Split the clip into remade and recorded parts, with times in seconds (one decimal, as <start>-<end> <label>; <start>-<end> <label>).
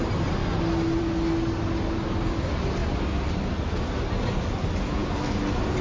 0.0-5.8 recorded